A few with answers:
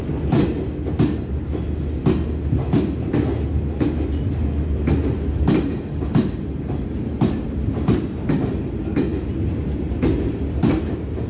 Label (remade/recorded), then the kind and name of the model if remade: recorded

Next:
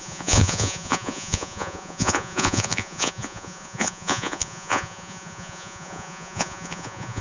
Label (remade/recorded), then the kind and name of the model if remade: remade, vocoder, Vocos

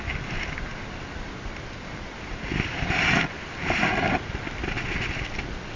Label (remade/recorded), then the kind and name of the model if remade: recorded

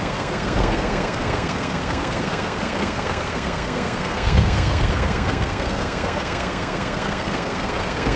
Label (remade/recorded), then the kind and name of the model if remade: remade, codec, SNAC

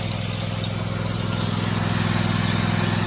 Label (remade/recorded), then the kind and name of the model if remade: recorded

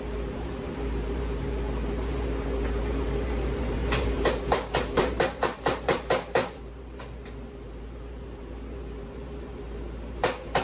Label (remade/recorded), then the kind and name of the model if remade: remade, vocoder, BigVGAN v2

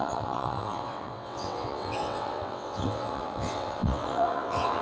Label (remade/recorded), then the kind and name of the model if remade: remade, vocoder, WaveNeXt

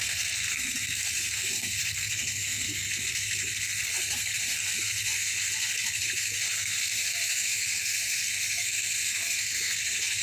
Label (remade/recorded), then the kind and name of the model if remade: remade, codec, SNAC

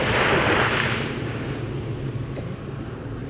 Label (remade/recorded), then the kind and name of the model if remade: recorded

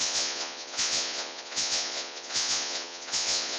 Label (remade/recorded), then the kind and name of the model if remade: remade, vocoder, Vocos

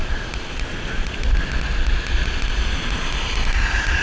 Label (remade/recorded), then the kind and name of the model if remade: recorded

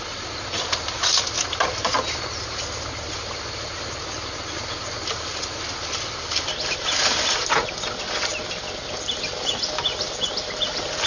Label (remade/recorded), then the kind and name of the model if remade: recorded